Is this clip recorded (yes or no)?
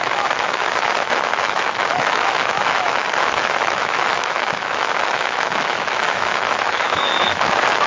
no